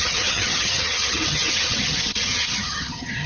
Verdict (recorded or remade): remade